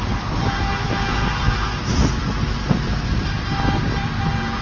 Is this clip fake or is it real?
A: real